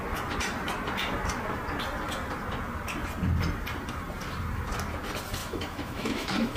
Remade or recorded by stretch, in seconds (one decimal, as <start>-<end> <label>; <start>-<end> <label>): 0.0-5.4 recorded; 5.4-6.6 remade